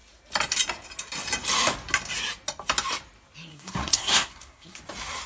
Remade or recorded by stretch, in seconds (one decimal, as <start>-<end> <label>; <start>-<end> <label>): 0.0-3.5 recorded; 3.5-4.8 remade; 4.8-5.3 recorded